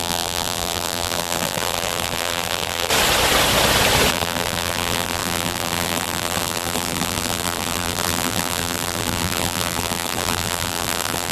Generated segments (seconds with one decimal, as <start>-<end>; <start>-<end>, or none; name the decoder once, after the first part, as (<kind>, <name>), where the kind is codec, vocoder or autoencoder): 0.0-2.9 (vocoder, BigVGAN v2); 4.1-11.3